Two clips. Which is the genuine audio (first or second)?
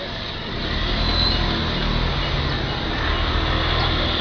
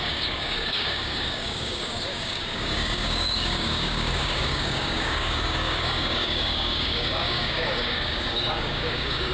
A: first